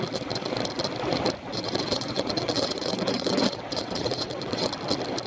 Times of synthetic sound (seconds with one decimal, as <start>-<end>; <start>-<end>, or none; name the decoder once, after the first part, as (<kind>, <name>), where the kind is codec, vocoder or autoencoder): 1.5-4.7 (vocoder, WaveNeXt)